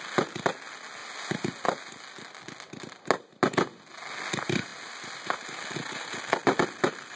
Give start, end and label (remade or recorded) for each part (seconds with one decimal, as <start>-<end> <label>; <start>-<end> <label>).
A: 0.0-7.2 recorded